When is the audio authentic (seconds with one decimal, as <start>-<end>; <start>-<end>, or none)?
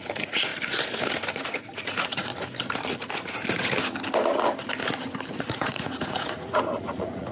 0.5-1.3; 2.3-5.3